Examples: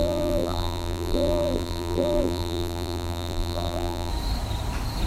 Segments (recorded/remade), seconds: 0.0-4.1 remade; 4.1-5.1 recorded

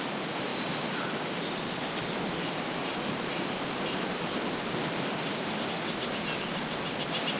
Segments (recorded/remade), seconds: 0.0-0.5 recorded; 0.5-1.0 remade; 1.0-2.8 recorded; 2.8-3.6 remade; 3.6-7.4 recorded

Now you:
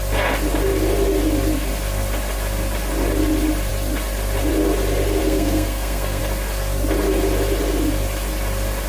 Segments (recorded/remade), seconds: 0.0-5.2 recorded; 5.2-6.2 remade; 6.2-8.9 recorded

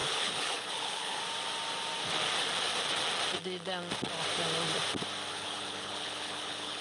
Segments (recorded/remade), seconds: 0.0-1.2 remade; 1.2-5.3 recorded; 5.3-6.8 remade